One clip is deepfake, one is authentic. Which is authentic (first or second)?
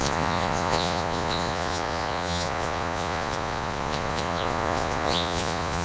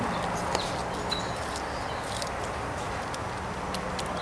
second